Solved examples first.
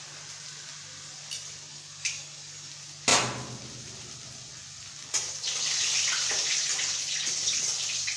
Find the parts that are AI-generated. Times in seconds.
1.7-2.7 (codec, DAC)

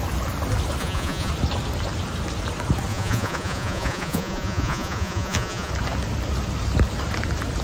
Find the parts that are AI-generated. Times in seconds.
0.8-1.3 (vocoder, Vocos); 2.9-5.7

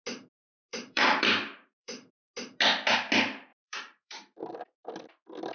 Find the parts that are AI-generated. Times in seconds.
0.7-2.3 (vocoder, BigVGAN v2); 3.5-4.5

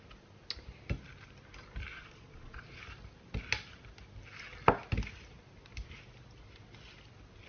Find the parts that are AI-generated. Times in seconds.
1.9-2.8 (vocoder, Vocos)

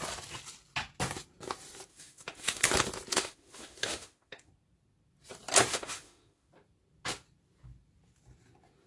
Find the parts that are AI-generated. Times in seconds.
1.9-2.7 (autoencoder, DAC-VAE); 3.1-4.5; 5.7-6.5

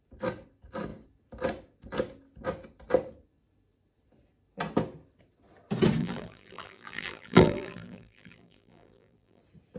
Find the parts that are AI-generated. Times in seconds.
6.0-9.4 (vocoder, BigVGAN v2)

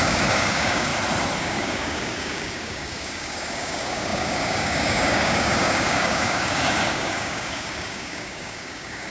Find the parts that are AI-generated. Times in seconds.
0.0-0.9 (codec, DAC); 1.4-9.1